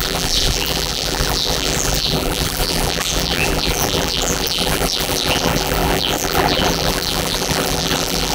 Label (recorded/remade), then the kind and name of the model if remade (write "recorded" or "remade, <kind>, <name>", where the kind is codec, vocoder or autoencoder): remade, vocoder, BigVGAN v2